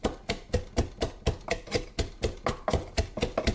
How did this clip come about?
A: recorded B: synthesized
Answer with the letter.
A